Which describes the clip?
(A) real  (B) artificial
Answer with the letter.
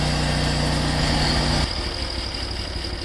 A